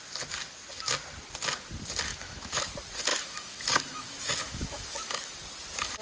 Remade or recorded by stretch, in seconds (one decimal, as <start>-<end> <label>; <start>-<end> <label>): 0.0-2.1 recorded; 2.1-2.7 remade; 2.7-3.1 recorded; 3.1-5.3 remade; 5.3-6.0 recorded